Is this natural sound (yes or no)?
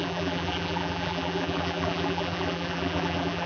no